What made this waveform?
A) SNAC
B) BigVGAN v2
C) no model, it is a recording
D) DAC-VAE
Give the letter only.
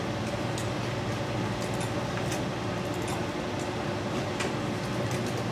C